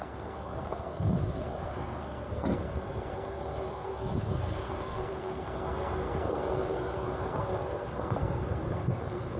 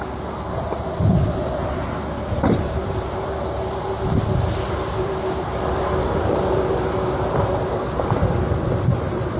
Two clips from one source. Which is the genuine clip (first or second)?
second